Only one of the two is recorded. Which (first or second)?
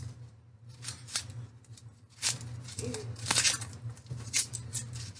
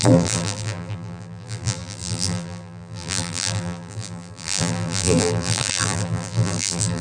first